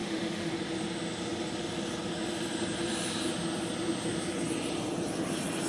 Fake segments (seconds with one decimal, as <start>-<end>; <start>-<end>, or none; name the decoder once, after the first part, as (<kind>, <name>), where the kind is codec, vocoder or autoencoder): 0.0-0.5 (autoencoder, DAC-VAE)